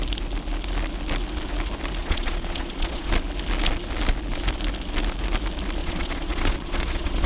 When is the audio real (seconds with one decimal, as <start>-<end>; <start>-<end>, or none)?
0.0-2.0; 3.1-5.8